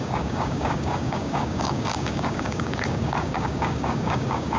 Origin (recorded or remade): remade